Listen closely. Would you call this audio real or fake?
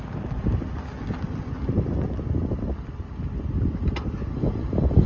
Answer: real